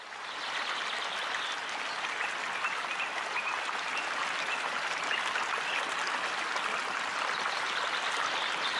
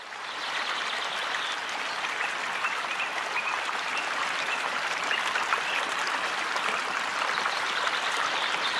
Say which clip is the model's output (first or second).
second